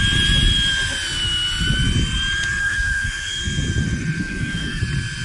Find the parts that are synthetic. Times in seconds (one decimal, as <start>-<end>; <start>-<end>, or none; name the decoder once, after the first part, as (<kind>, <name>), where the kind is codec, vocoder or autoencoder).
2.6-3.4 (codec, SNAC); 4.2-4.8